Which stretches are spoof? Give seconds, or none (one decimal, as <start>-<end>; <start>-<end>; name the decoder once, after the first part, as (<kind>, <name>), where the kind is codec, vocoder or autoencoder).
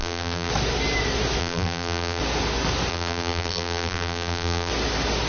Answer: 0.0-0.5 (vocoder, BigVGAN v2); 1.4-2.2; 2.9-4.7